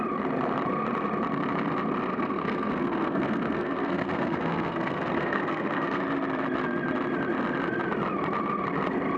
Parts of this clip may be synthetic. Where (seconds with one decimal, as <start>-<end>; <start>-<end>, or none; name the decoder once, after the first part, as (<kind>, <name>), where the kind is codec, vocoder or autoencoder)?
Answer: 2.1-6.0 (codec, SNAC)